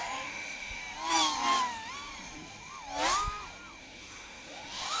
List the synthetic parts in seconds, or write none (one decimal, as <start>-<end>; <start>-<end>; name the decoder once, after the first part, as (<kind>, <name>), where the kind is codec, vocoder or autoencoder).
0.0-0.8 (autoencoder, DAC-VAE); 3.8-5.0